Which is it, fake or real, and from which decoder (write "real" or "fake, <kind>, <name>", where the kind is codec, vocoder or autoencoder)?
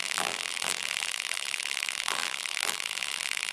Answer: fake, vocoder, BigVGAN v2